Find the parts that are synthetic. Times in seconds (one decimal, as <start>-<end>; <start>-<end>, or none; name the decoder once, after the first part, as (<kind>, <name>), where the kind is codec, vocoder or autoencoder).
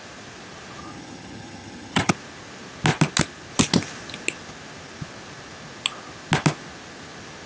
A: 0.8-2.1 (vocoder, HiFi-GAN)